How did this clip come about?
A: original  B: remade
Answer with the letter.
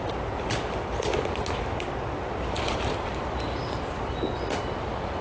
A